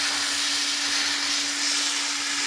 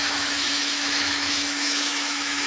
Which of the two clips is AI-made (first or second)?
second